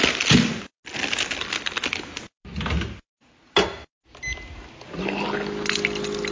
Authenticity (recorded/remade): recorded